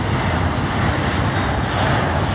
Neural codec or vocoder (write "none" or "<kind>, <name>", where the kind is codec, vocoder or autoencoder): none